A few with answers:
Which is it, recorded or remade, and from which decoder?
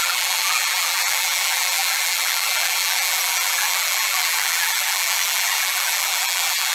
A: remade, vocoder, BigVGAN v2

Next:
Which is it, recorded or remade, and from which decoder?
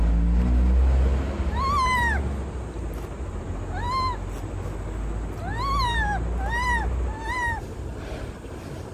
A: recorded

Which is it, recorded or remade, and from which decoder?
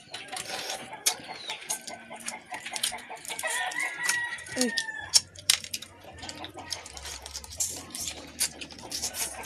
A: remade, vocoder, BigVGAN v2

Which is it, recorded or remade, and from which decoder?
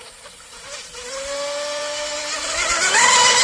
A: remade, vocoder, BigVGAN v2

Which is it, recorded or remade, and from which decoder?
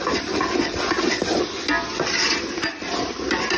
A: recorded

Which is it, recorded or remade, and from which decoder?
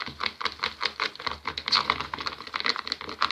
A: recorded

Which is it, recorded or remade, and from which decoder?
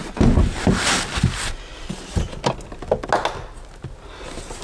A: recorded